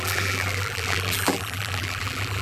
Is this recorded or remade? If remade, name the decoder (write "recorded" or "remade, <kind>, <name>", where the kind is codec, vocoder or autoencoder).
remade, vocoder, BigVGAN v2